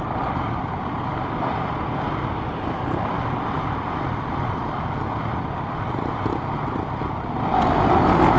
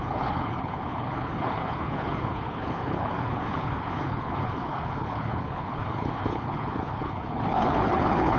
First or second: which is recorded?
first